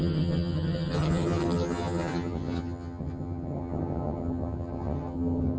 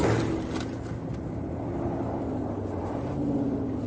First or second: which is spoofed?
first